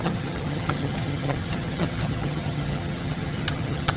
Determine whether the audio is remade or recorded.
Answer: remade